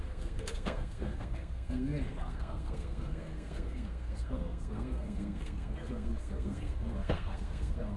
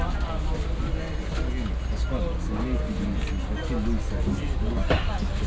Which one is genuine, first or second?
second